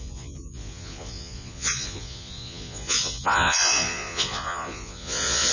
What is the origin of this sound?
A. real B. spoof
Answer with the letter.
B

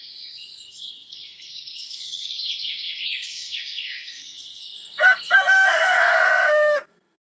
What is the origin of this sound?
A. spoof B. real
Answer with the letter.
A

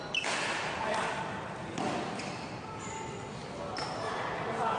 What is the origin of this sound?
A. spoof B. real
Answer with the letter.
B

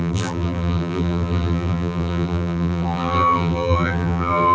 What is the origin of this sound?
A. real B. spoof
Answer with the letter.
B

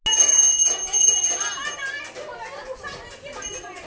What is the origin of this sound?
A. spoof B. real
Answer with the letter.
B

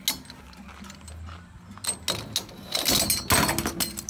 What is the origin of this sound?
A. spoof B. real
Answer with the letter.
B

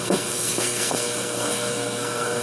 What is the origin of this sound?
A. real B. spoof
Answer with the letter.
B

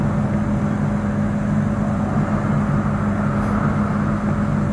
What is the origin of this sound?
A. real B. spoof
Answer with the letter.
A